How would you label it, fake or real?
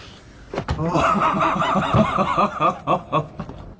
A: real